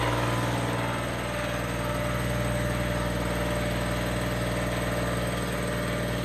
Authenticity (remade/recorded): recorded